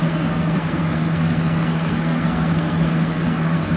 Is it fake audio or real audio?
fake